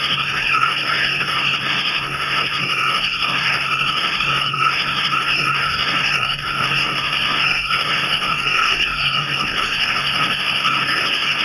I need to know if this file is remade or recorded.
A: remade